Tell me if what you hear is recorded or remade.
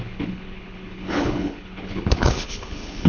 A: remade